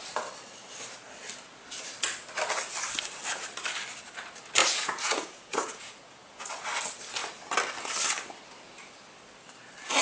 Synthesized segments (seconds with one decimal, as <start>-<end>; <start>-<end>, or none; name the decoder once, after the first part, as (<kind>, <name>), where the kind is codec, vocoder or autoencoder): 4.6-6.5 (vocoder, Vocos)